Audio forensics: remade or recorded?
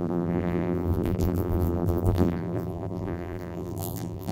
remade